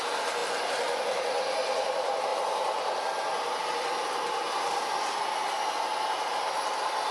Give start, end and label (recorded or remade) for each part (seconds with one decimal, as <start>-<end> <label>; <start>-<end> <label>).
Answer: 0.0-7.1 recorded